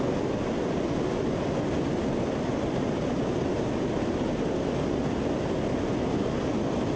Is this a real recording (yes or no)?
yes